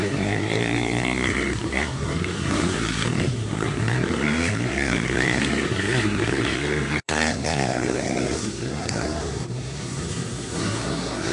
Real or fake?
fake